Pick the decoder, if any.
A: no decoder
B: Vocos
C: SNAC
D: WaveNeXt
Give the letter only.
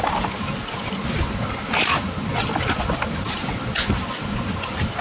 A